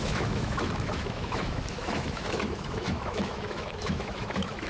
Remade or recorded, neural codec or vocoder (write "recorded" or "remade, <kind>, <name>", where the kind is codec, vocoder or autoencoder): remade, autoencoder, DAC-VAE